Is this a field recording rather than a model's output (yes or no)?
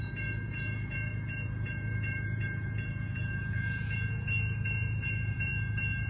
no